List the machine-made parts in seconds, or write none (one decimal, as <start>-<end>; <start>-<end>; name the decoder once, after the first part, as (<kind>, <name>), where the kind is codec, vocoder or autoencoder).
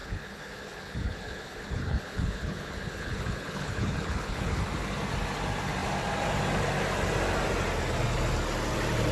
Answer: 0.0-4.6 (codec, HILCodec)